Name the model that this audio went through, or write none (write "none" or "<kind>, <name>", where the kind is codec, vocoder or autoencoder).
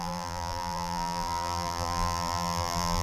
vocoder, BigVGAN v2